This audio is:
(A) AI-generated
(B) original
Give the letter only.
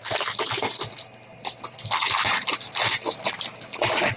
B